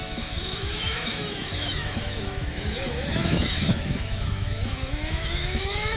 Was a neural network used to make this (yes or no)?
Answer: yes